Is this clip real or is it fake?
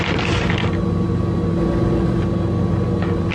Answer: real